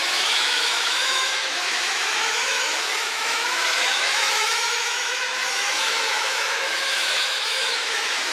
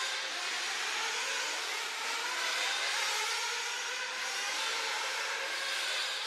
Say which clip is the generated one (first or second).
first